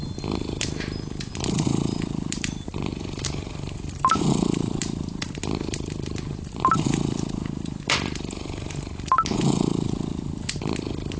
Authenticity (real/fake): real